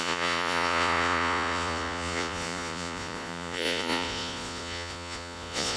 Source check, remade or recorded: remade